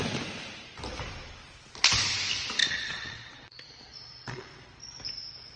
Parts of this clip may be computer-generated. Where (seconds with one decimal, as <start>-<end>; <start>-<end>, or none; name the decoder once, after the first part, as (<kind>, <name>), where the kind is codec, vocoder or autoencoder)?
2.6-4.5 (vocoder, Vocos)

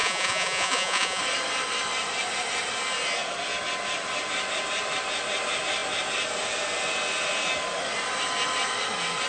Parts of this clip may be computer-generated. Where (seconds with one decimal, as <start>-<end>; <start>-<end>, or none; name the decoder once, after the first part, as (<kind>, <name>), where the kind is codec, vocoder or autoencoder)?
0.0-1.2 (vocoder, Vocos)

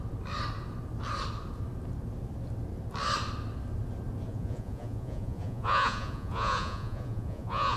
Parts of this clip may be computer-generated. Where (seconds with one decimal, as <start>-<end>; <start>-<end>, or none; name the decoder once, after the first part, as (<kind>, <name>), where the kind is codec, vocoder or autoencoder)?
4.3-7.8 (vocoder, Vocos)

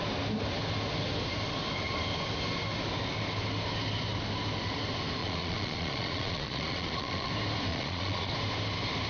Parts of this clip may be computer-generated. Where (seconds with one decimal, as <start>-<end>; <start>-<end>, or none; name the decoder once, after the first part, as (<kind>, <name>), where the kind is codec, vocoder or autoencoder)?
5.2-7.3 (vocoder, Vocos); 7.7-8.3

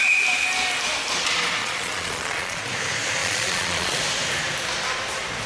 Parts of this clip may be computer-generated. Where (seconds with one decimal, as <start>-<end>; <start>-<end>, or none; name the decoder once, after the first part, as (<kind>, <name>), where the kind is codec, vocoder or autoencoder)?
1.6-2.6 (vocoder, Vocos); 3.2-4.0